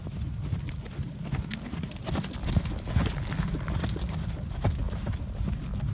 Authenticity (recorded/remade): recorded